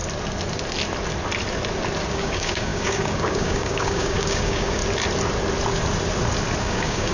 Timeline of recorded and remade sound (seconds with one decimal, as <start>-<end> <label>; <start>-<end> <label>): 0.0-2.1 recorded; 2.1-4.8 remade; 4.8-6.6 recorded; 6.6-7.1 remade